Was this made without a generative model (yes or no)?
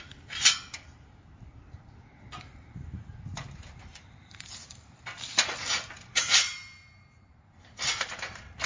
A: no